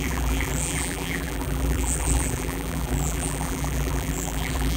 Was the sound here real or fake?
fake